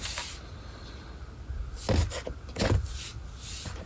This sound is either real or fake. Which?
real